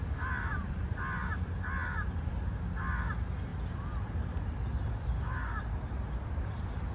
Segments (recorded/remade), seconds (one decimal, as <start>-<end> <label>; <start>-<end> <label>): 0.0-6.9 recorded